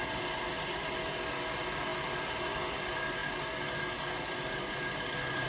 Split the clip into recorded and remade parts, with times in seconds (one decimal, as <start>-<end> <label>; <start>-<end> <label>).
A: 0.0-5.5 recorded